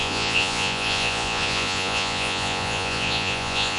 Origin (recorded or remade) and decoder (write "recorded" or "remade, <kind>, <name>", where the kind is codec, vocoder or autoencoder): remade, vocoder, Vocos